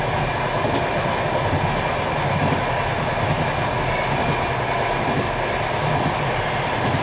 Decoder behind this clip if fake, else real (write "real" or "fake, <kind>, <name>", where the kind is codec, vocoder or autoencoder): real